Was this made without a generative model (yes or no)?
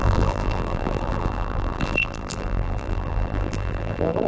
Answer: no